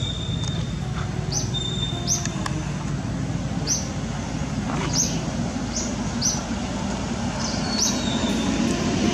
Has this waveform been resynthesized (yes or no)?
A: no